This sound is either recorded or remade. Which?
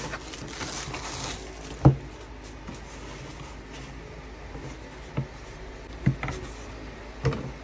recorded